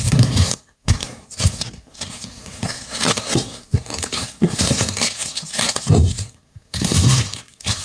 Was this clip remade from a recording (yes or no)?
yes